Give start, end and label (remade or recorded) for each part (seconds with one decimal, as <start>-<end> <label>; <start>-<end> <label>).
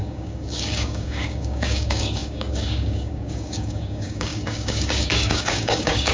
0.0-6.1 remade